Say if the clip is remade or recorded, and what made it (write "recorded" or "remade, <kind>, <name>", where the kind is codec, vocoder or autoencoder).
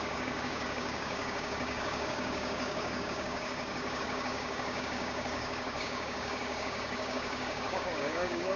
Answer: remade, codec, DAC